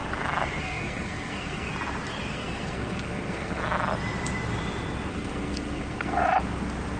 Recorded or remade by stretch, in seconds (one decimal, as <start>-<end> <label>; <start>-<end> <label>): 0.0-0.6 recorded; 0.6-1.7 remade; 1.7-2.3 recorded; 2.3-3.6 remade; 3.6-5.1 recorded; 5.1-6.2 remade; 6.2-7.0 recorded